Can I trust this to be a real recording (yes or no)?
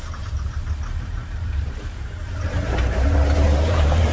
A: no